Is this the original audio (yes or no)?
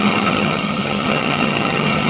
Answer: no